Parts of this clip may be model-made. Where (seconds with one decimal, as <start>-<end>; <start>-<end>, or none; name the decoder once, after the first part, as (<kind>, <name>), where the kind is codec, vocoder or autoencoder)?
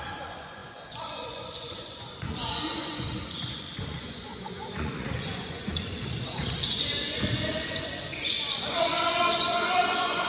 0.0-10.3 (vocoder, Vocos)